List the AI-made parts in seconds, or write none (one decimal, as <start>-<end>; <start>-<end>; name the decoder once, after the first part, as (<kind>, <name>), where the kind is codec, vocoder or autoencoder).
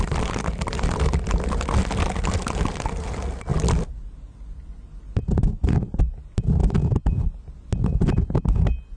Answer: none